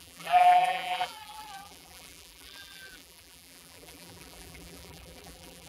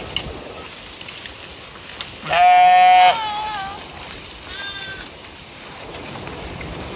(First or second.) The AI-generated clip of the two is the first